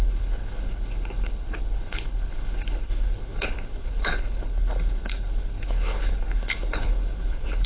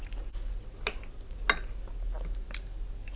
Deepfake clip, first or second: first